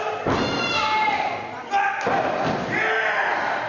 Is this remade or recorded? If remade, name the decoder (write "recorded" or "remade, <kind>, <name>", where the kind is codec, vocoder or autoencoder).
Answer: recorded